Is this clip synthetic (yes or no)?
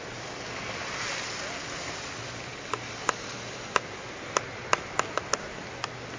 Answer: no